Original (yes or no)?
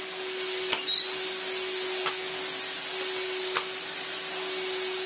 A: yes